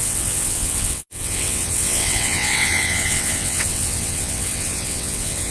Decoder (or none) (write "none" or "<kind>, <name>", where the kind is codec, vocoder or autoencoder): vocoder, WaveNeXt